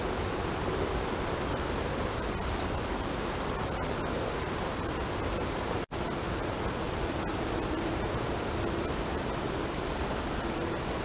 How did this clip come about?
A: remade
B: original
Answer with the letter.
A